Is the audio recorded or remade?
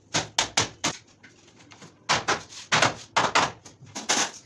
recorded